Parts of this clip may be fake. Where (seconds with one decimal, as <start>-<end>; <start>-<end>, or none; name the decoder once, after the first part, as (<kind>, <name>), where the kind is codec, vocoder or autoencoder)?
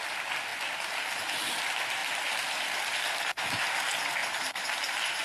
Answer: none